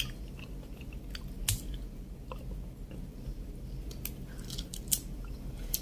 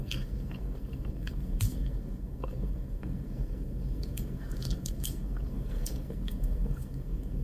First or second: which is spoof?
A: second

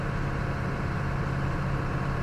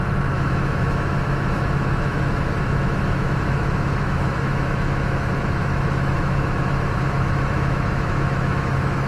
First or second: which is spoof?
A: second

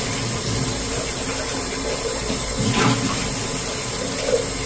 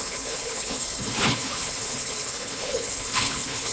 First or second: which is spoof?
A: second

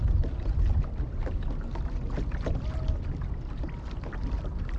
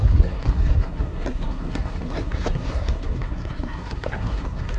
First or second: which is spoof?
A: second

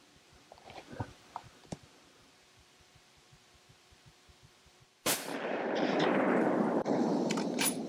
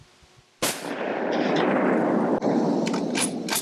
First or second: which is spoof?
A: first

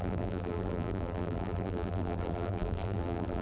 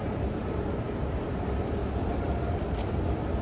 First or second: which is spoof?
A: first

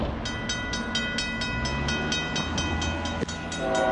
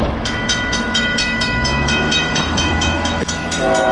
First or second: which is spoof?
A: second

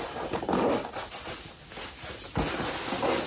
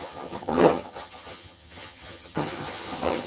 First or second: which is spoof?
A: second